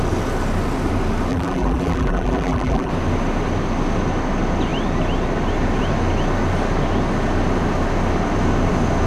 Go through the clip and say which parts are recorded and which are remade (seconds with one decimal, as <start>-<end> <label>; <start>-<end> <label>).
0.0-1.3 recorded; 1.3-2.9 remade; 2.9-9.1 recorded